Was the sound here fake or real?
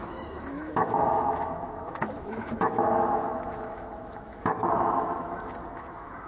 fake